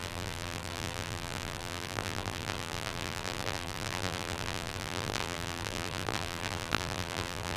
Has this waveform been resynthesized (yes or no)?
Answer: yes